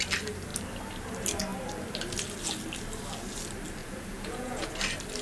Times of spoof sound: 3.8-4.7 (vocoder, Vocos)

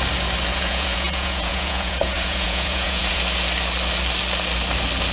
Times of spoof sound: 0.5-3.2 (vocoder, Vocos)

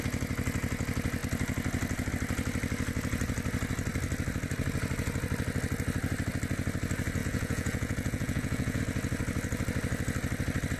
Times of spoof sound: 7.2-8.8 (vocoder, Vocos)

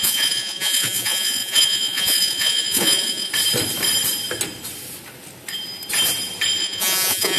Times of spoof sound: 0.0-3.3 (vocoder, Vocos); 6.6-7.4

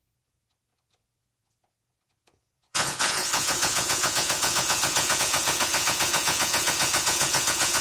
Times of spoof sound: 0.0-7.8 (vocoder, Vocos)

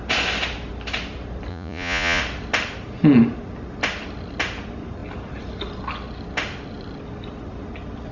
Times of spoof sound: 1.5-2.2 (vocoder, Vocos)

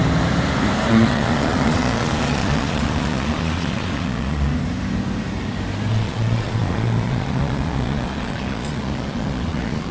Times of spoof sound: 0.9-4.5 (vocoder, Vocos); 5.9-9.9